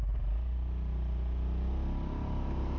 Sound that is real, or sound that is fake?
real